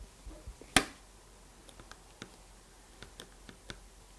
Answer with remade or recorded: recorded